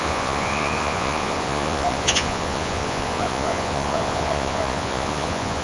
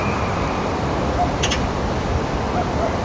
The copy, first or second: first